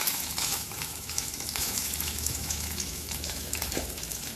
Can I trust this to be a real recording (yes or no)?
no